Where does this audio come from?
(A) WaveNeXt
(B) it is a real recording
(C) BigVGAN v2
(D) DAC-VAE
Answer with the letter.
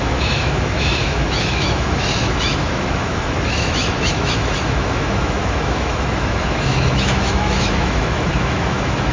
D